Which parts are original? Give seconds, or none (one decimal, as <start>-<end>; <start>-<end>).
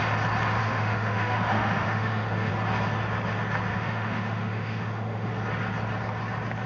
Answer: 0.0-0.6; 2.5-3.7; 5.3-6.7